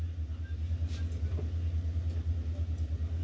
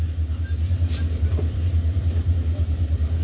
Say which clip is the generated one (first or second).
second